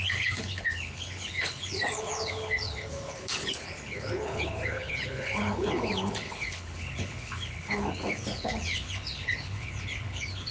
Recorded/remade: remade